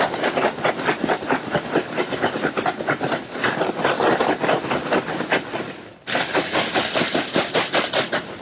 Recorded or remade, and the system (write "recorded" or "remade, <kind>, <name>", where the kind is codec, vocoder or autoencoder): recorded